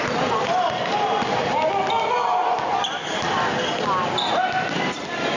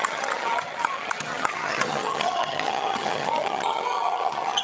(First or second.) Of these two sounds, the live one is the first